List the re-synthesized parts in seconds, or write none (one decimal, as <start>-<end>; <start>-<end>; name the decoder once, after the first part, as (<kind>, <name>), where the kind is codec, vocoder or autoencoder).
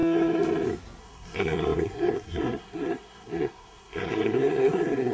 1.0-5.1 (codec, SNAC)